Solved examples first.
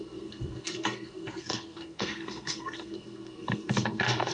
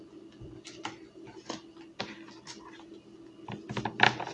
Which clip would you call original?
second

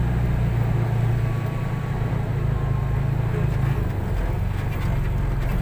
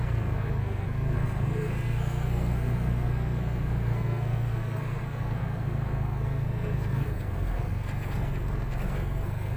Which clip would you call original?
first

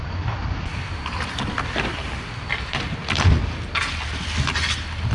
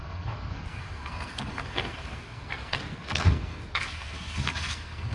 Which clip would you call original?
first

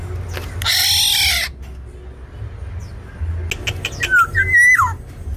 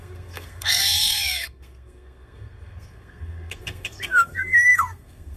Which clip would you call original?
first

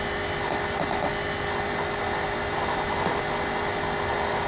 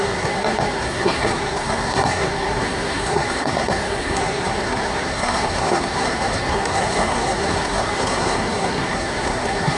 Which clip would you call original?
first